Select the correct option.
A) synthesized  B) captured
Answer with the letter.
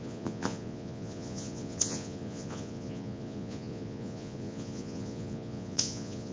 A